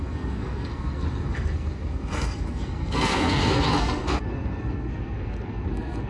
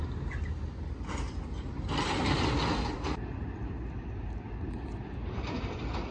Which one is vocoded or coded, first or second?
first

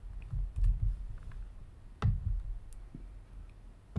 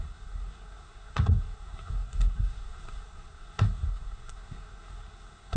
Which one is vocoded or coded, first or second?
second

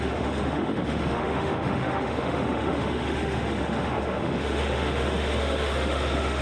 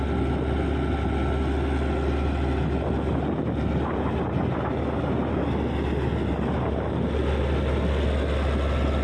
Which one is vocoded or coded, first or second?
first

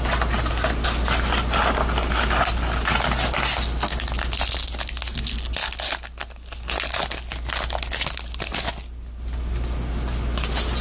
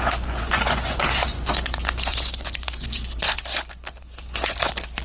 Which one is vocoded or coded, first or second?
second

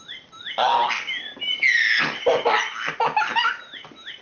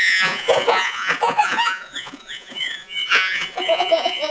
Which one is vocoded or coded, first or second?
second